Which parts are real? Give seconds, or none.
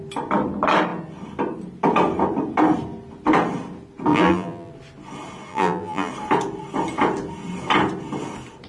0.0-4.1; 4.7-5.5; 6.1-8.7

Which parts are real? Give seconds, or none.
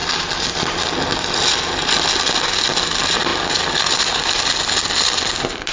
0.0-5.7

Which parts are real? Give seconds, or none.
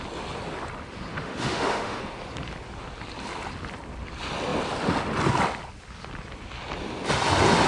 0.0-1.1; 2.0-7.7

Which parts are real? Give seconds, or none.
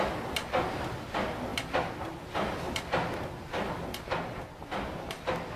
0.0-5.6